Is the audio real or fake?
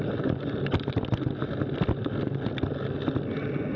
real